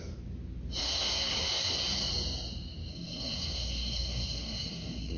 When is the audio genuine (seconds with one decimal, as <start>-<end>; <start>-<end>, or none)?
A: 0.0-0.8; 1.7-2.9